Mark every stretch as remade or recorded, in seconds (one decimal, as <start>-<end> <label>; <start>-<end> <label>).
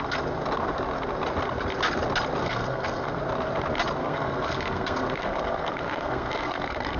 0.0-2.4 recorded; 2.4-3.2 remade; 3.2-4.0 recorded; 4.0-7.0 remade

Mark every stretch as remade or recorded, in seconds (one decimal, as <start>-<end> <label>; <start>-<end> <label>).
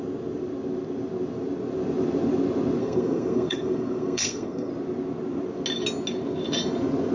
0.0-2.8 recorded; 2.8-4.7 remade; 4.7-7.1 recorded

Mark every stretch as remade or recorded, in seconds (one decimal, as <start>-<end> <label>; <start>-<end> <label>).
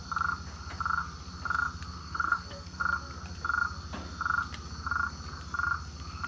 0.0-2.0 recorded; 2.0-2.8 remade; 2.8-6.3 recorded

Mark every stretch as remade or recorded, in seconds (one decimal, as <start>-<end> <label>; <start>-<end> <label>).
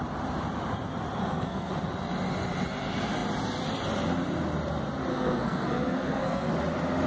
0.0-1.2 recorded; 1.2-1.7 remade; 1.7-5.1 recorded; 5.1-6.5 remade; 6.5-7.1 recorded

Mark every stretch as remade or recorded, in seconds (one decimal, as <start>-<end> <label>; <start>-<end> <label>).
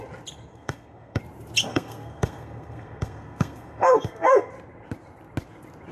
0.0-0.5 recorded; 0.5-1.2 remade; 1.2-1.7 recorded; 1.7-4.5 remade; 4.5-5.9 recorded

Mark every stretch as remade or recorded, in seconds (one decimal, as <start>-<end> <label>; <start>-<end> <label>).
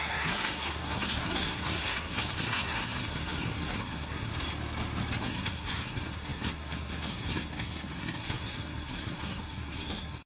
0.0-4.3 remade; 4.3-5.2 recorded; 5.2-10.3 remade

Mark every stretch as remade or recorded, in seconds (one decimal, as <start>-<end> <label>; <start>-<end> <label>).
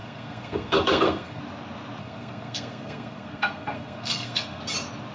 0.0-1.4 remade; 1.4-2.0 recorded; 2.0-4.6 remade; 4.6-5.1 recorded